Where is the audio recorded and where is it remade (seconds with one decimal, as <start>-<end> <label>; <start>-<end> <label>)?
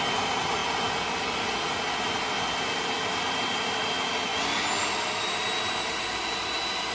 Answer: 0.0-6.9 recorded